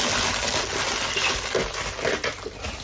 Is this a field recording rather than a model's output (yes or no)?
yes